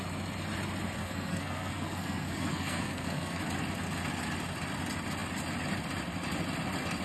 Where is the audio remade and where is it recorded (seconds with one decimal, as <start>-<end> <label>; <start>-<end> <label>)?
0.0-1.0 recorded; 1.0-3.4 remade; 3.4-7.0 recorded